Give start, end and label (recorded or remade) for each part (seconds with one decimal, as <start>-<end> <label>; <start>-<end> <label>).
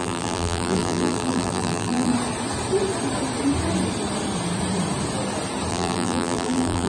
0.0-2.1 remade; 2.1-5.7 recorded; 5.7-6.9 remade